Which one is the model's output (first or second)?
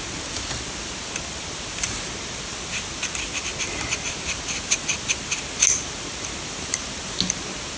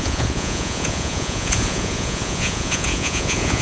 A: second